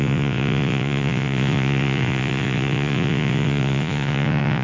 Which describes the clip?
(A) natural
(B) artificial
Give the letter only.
B